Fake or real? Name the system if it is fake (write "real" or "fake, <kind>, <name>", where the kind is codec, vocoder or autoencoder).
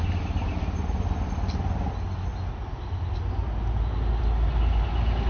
real